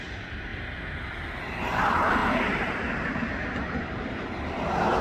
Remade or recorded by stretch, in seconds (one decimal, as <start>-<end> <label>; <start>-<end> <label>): 0.0-0.5 remade; 0.5-1.8 recorded; 1.8-5.0 remade